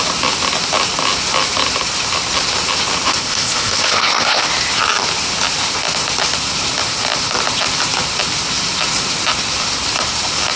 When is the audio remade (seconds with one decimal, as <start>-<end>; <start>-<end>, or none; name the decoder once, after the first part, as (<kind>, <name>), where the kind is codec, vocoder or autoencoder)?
3.1-4.5 (codec, ZipCodec)